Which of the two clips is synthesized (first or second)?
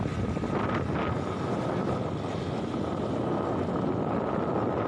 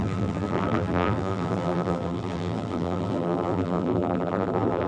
second